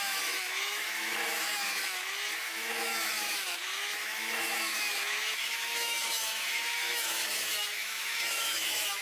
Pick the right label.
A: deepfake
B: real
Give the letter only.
A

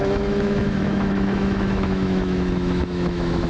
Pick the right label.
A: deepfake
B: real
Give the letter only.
A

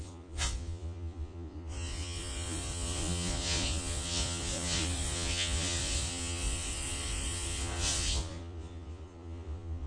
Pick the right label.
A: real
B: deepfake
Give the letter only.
B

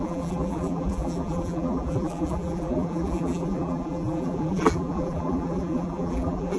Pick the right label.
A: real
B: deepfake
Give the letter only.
B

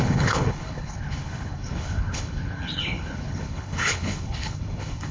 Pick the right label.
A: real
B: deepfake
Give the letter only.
B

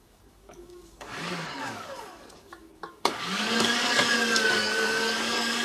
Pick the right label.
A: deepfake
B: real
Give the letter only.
A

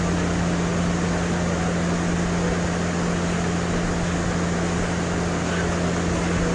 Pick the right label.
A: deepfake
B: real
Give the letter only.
B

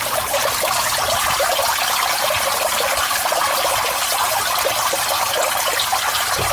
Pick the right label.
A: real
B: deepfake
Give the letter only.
A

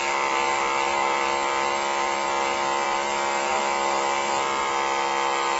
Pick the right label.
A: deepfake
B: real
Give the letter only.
A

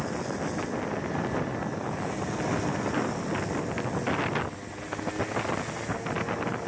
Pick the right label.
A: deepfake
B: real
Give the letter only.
B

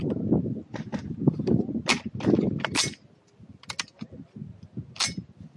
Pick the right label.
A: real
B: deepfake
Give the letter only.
A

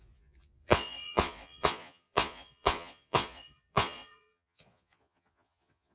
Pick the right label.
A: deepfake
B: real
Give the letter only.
A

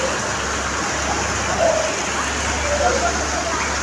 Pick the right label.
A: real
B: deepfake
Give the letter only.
A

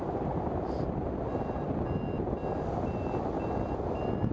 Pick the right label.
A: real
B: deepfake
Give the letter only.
A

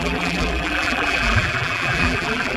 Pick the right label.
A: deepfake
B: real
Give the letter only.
A